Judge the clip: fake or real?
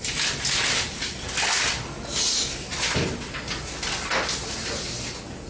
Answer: real